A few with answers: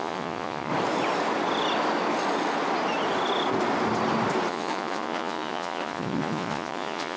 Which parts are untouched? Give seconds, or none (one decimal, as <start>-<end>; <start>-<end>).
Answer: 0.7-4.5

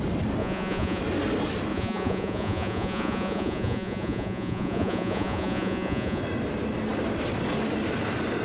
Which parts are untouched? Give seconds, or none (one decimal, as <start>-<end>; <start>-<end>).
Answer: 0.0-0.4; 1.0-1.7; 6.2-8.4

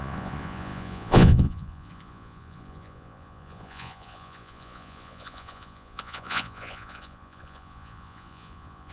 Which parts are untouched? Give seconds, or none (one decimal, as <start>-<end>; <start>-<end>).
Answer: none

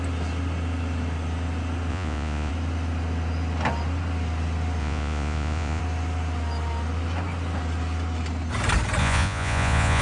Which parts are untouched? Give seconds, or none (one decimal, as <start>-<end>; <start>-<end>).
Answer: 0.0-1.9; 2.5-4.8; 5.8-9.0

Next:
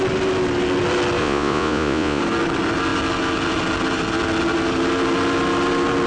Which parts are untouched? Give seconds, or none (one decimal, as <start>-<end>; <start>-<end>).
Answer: 0.0-1.2; 2.2-6.1